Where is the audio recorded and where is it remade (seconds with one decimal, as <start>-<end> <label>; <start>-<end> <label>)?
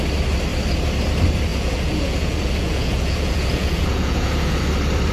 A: 0.0-1.5 recorded; 1.5-4.6 remade; 4.6-5.1 recorded